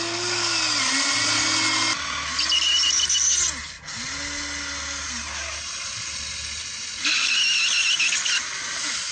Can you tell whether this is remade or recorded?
recorded